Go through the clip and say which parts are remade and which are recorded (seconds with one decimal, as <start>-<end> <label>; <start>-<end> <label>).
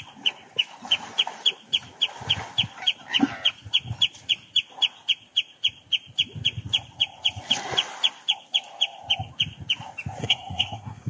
0.0-10.2 recorded; 10.2-11.1 remade